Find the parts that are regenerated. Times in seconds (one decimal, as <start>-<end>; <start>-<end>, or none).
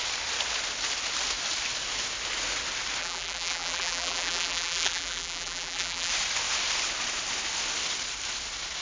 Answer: 3.0-6.1